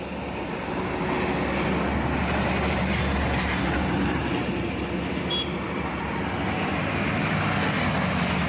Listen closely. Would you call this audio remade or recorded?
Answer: recorded